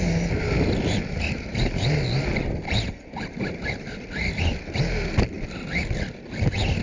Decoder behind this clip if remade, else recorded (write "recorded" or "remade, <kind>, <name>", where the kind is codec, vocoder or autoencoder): recorded